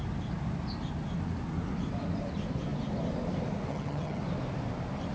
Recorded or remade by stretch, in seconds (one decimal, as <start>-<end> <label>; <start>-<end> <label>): 0.0-3.7 recorded; 3.7-4.2 remade; 4.2-5.1 recorded